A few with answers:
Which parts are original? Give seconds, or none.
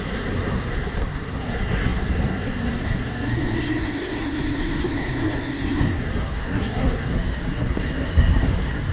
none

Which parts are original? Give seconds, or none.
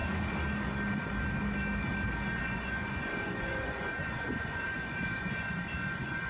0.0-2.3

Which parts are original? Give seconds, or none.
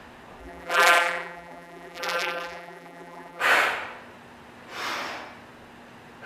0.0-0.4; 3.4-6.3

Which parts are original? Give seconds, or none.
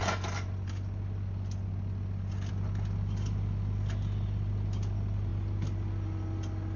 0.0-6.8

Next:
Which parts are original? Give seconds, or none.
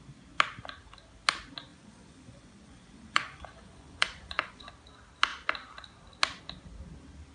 0.0-1.7; 4.7-7.3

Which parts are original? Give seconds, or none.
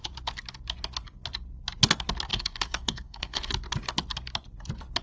0.0-2.3; 3.5-5.0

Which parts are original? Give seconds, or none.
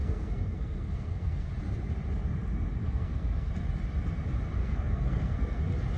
1.5-2.8; 3.5-4.6; 5.6-6.0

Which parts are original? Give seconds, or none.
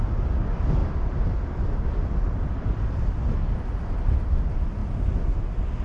0.0-5.8